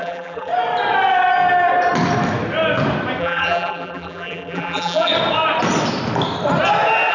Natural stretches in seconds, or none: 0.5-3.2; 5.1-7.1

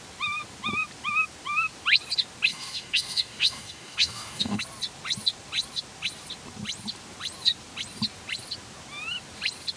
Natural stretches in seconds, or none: 0.0-2.5; 4.6-9.8

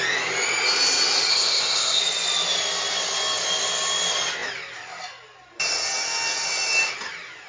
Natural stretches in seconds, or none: 0.0-1.3; 2.0-7.5

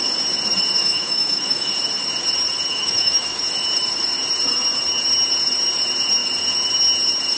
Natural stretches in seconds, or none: 0.0-0.8; 1.7-2.7; 3.4-7.4

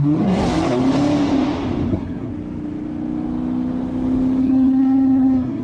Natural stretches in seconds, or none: 0.8-1.9; 2.3-4.4